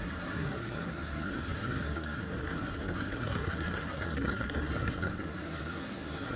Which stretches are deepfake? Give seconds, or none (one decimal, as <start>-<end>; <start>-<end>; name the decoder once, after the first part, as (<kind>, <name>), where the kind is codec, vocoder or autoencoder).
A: 0.0-6.4 (codec, SNAC)